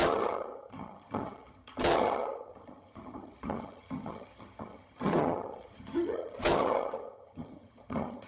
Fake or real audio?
fake